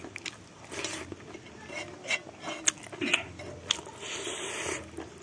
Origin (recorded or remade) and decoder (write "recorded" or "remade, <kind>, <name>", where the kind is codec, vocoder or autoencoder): recorded